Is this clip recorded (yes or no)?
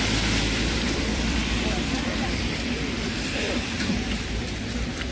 no